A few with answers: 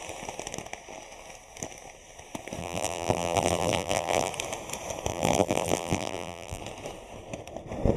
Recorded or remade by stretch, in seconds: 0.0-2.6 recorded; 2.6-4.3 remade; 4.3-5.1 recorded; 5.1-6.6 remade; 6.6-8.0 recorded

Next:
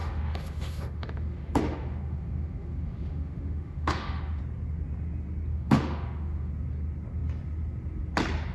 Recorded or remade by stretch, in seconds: 0.0-4.4 remade; 4.4-5.5 recorded; 5.5-6.5 remade; 6.5-8.5 recorded

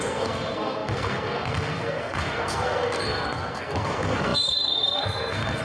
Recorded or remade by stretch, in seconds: 0.0-5.6 remade

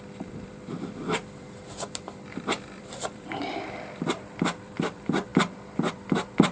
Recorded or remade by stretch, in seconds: 0.0-5.3 remade; 5.3-5.9 recorded; 5.9-6.5 remade

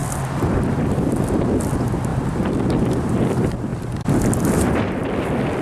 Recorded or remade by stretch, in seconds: 0.0-1.7 remade; 1.7-2.1 recorded; 2.1-3.2 remade; 3.2-3.7 recorded; 3.7-4.2 remade; 4.2-5.6 recorded